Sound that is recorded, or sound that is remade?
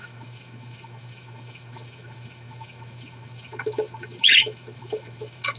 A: remade